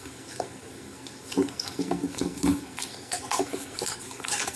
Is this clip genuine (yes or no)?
no